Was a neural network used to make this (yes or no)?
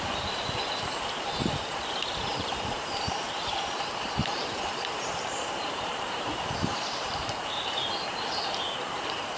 yes